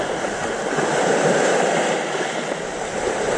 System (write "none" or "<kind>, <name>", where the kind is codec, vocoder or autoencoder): none